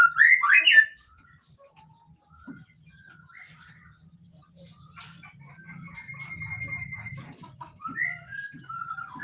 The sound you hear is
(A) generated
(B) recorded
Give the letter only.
B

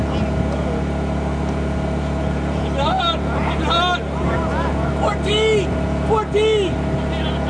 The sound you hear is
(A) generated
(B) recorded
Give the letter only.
B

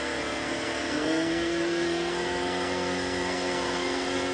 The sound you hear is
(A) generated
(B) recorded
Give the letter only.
A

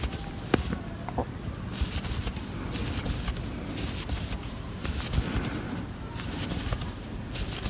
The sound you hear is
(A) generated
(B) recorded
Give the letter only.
B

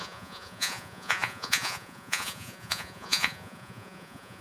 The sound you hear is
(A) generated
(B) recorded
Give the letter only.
A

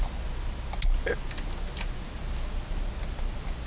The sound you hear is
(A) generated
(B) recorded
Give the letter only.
B